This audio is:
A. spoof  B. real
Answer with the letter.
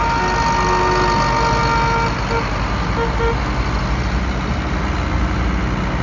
B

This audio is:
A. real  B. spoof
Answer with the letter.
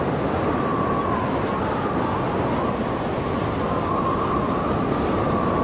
A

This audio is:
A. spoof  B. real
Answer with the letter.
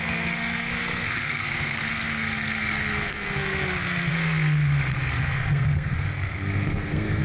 A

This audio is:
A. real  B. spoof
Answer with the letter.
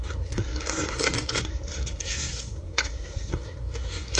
B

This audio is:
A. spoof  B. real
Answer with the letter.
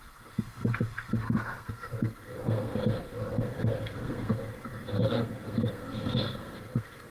A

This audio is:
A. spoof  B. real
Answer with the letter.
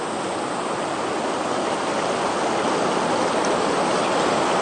B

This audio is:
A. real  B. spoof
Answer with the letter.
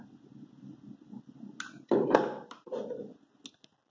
A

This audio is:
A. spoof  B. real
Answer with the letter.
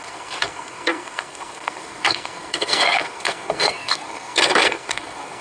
A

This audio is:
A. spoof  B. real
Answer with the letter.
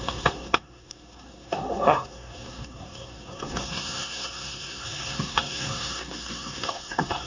A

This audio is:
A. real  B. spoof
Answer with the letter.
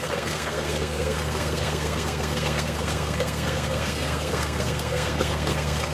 B